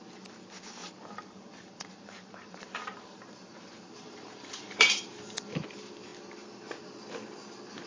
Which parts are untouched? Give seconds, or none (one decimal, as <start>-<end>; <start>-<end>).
0.0-0.8; 5.5-7.9